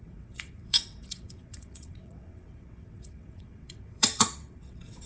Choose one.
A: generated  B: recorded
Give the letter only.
A